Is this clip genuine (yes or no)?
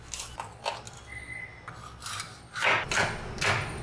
yes